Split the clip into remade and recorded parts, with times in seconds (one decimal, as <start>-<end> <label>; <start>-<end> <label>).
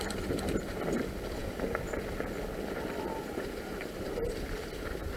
0.0-5.2 recorded